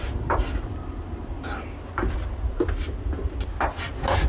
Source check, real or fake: real